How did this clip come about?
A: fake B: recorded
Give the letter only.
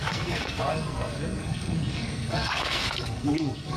A